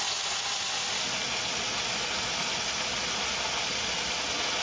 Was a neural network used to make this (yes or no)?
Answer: no